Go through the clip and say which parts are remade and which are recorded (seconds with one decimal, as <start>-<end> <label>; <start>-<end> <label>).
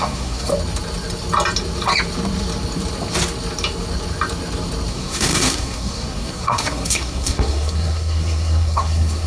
0.0-0.5 remade; 0.5-4.9 recorded; 4.9-9.3 remade